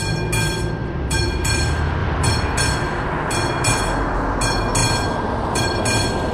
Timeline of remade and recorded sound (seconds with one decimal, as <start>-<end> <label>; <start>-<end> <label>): 0.0-0.8 recorded; 0.8-1.5 remade; 1.5-2.0 recorded; 2.0-2.6 remade; 2.6-4.8 recorded; 4.8-5.8 remade; 5.8-6.3 recorded